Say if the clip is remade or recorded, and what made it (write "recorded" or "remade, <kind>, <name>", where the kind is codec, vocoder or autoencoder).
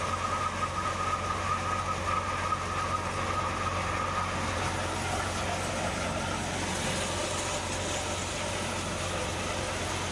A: recorded